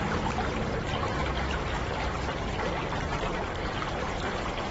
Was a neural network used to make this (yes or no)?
yes